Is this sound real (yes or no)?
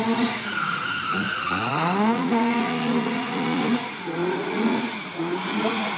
no